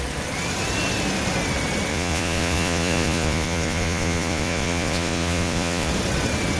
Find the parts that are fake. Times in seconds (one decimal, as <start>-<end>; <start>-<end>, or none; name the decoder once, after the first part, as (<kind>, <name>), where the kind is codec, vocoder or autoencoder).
1.9-5.9 (vocoder, Vocos)